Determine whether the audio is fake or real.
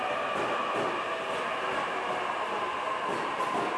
real